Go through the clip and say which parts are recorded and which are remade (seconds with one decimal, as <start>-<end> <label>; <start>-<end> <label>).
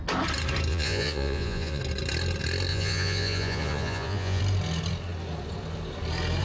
0.0-0.7 recorded; 0.7-1.8 remade; 1.8-2.7 recorded; 2.7-4.4 remade; 4.4-6.4 recorded